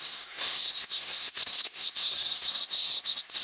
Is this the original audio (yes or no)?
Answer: no